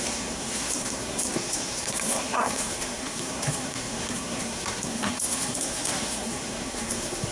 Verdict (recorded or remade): remade